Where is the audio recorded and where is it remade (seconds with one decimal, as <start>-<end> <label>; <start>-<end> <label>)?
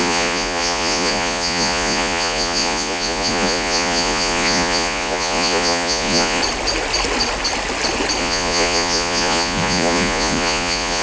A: 0.0-6.4 remade; 6.4-8.2 recorded; 8.2-11.0 remade